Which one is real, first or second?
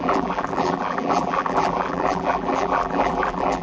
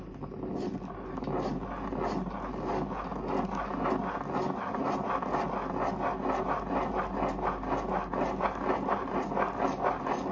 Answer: second